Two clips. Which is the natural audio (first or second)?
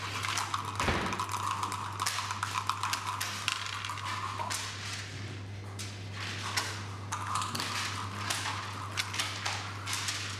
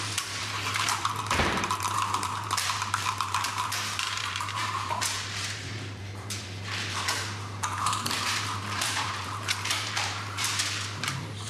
first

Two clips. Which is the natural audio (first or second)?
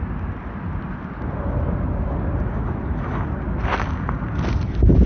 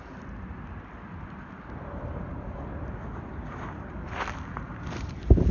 first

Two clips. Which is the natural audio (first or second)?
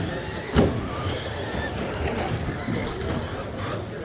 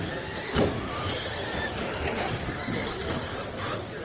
first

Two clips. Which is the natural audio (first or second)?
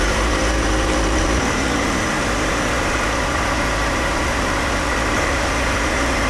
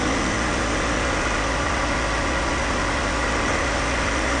second